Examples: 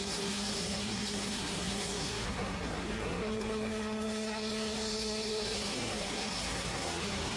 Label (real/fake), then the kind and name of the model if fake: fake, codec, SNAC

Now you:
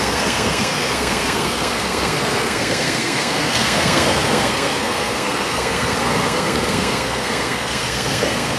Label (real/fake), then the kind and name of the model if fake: fake, codec, SNAC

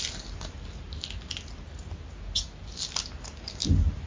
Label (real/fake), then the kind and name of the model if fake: real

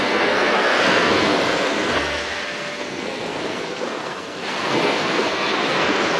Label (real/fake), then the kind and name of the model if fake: fake, codec, SNAC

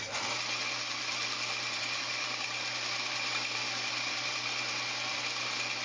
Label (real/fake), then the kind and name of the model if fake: real